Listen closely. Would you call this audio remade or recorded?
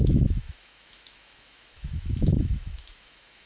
remade